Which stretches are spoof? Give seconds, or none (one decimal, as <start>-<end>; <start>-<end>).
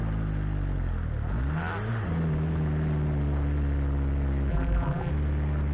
4.5-5.1